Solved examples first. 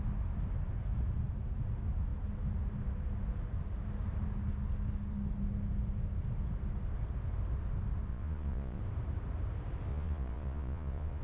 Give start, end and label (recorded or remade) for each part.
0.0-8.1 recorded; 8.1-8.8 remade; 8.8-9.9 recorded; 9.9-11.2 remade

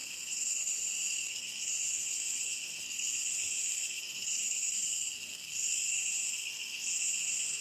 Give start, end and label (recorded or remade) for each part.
0.0-7.6 remade

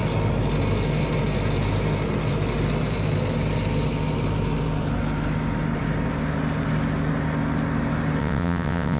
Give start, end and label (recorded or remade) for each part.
0.0-8.2 recorded; 8.2-9.0 remade

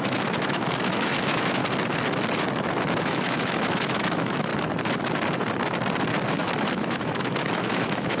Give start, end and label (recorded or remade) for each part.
0.0-1.6 remade; 1.6-3.0 recorded; 3.0-4.5 remade; 4.5-6.3 recorded; 6.3-8.2 remade

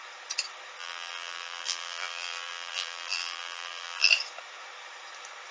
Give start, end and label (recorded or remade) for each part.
0.0-0.8 recorded; 0.8-4.1 remade; 4.1-5.5 recorded

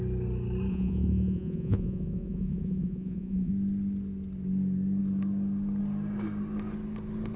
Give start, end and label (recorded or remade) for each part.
0.0-0.7 recorded; 0.7-3.5 remade; 3.5-7.4 recorded